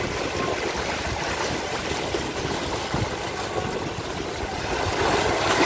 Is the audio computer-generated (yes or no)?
no